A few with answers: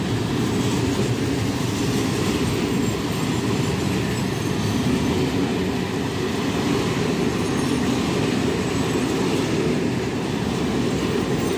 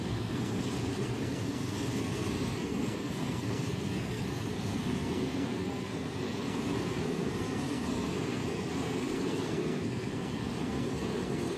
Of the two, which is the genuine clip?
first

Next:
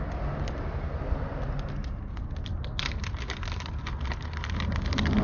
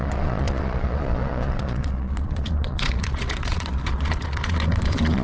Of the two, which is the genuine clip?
first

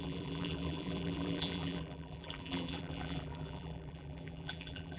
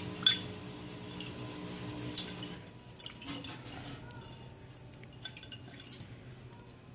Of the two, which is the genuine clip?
second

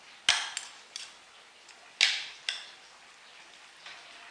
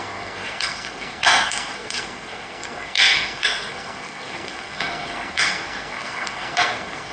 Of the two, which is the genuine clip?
first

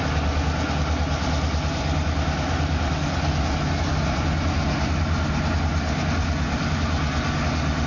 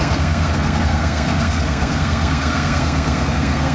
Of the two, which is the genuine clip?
first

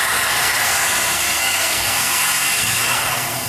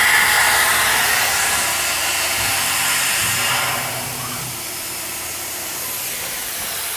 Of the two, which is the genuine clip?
second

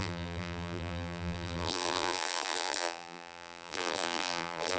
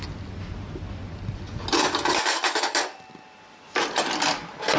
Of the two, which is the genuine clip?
second